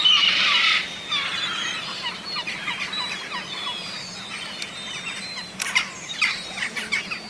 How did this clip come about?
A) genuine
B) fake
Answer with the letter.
B